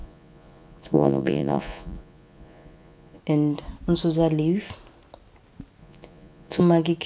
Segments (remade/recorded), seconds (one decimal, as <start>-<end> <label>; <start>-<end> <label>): 0.0-3.2 remade; 3.2-5.8 recorded; 5.8-6.6 remade; 6.6-7.1 recorded